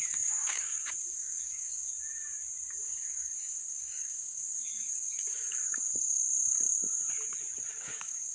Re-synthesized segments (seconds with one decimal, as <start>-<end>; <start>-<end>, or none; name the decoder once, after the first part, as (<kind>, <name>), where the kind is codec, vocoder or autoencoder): 0.0-1.9 (codec, DAC); 2.7-6.2; 7.7-8.3